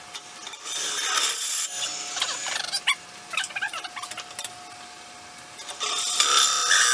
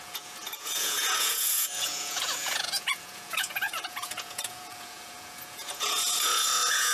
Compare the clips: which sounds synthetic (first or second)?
second